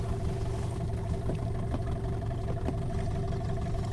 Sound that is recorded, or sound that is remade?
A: recorded